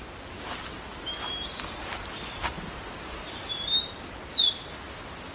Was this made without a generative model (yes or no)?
yes